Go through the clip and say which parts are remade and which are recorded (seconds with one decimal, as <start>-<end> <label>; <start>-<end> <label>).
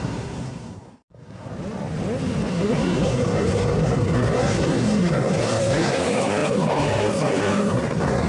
0.0-1.5 remade; 1.5-2.5 recorded; 2.5-8.3 remade